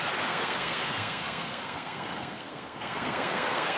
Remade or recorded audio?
remade